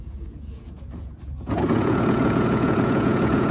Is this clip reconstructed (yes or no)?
yes